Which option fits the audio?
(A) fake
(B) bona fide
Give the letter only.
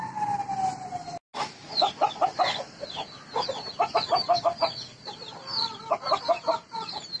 B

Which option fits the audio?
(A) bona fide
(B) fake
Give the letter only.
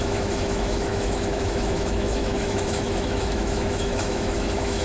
B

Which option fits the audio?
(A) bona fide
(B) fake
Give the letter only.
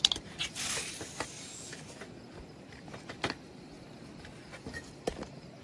A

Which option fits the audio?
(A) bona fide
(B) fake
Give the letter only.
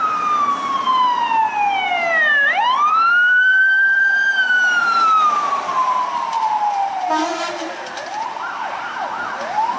B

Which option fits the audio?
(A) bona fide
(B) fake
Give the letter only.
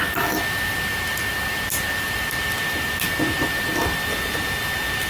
A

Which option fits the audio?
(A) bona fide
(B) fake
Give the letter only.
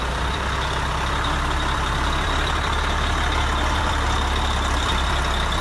B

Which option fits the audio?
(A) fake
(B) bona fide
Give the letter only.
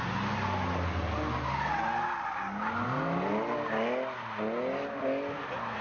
B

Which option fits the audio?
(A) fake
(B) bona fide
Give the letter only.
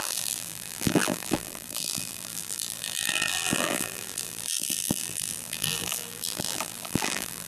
A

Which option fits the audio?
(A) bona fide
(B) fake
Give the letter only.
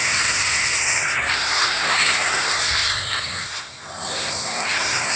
B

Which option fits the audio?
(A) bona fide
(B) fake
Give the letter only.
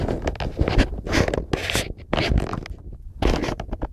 A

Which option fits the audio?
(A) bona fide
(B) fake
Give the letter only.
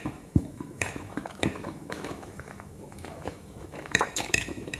B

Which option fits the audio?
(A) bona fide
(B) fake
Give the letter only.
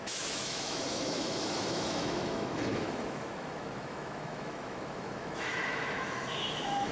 B